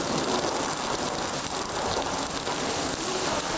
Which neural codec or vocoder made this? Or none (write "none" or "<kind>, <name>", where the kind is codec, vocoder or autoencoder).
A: none